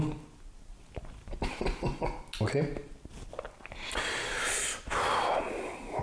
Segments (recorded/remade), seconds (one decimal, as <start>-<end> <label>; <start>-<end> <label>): 0.0-6.0 recorded